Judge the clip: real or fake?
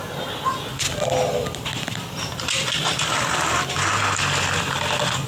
real